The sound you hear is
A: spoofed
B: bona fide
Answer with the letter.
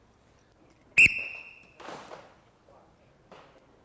B